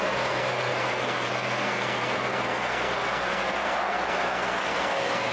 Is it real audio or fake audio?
fake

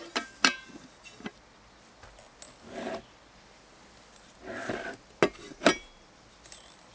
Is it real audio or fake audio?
real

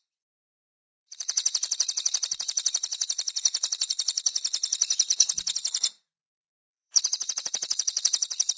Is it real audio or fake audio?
fake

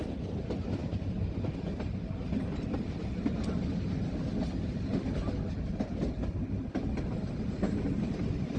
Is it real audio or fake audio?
real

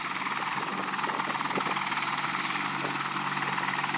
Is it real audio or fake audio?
real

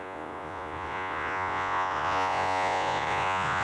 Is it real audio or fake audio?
fake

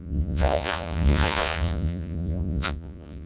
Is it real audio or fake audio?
fake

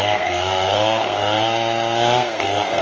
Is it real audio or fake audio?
fake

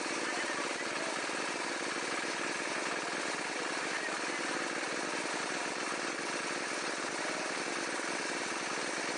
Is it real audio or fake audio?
real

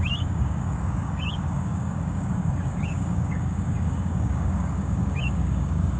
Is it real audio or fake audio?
fake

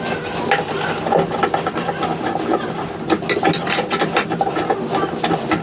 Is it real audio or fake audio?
real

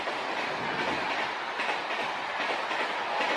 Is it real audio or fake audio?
real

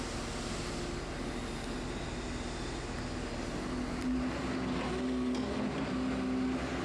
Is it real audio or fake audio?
real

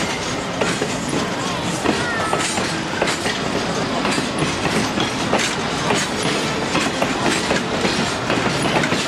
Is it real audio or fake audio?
real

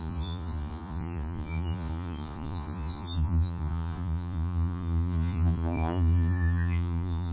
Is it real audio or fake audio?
fake